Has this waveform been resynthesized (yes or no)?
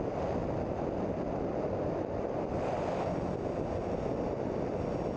no